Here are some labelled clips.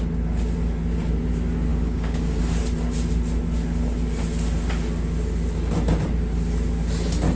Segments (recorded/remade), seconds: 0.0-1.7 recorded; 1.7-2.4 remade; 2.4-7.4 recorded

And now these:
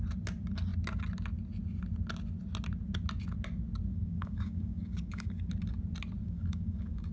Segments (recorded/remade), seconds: 0.0-3.9 recorded; 3.9-5.5 remade; 5.5-6.2 recorded; 6.2-7.1 remade

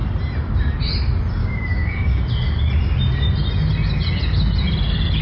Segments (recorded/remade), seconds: 0.0-1.4 recorded; 1.4-2.2 remade; 2.2-5.2 recorded

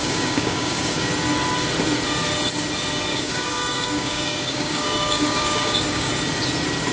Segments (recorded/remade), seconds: 0.0-1.1 remade; 1.1-3.1 recorded; 3.1-6.1 remade; 6.1-6.9 recorded

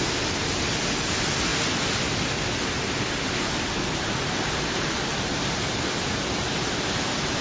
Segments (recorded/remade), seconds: 0.0-7.4 recorded

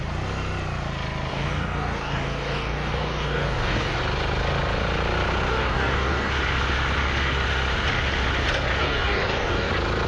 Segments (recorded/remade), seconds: 0.0-1.3 recorded; 1.3-4.0 remade; 4.0-5.5 recorded; 5.5-6.3 remade; 6.3-8.8 recorded; 8.8-9.7 remade; 9.7-10.1 recorded

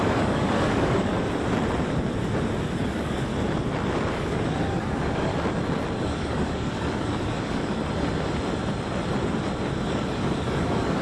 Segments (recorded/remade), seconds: 0.0-1.1 remade; 1.1-2.8 recorded; 2.8-3.3 remade; 3.3-3.9 recorded; 3.9-5.3 remade; 5.3-6.0 recorded; 6.0-7.8 remade; 7.8-9.9 recorded; 9.9-11.0 remade